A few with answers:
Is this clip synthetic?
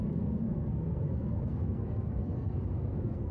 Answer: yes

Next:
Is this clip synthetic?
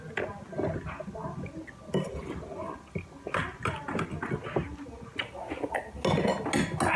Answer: no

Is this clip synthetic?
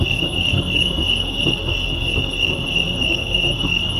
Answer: yes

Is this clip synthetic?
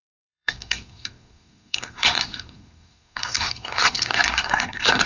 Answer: yes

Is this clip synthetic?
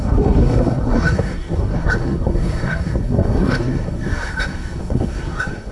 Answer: yes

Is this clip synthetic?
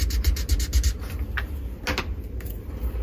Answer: no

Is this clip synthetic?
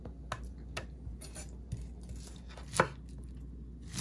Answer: no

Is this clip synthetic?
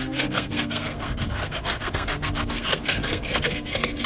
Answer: yes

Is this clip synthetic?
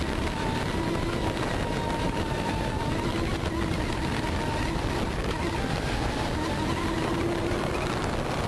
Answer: no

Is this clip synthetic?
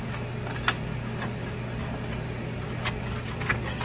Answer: no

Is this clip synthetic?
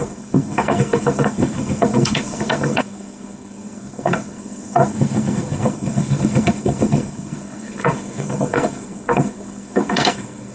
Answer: yes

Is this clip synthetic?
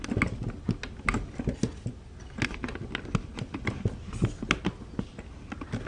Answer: no